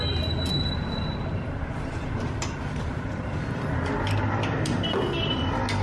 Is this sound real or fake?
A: real